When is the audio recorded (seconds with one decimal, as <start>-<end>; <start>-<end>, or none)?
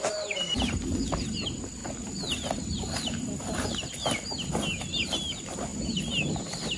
0.0-6.8